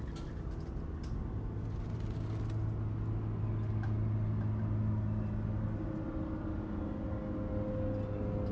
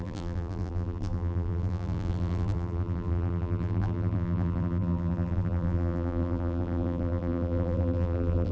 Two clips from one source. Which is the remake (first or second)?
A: second